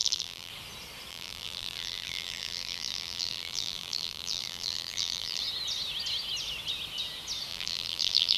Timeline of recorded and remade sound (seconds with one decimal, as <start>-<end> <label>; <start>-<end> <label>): 0.0-0.5 remade; 0.5-1.1 recorded; 1.1-5.4 remade; 5.4-7.5 recorded; 7.5-8.4 remade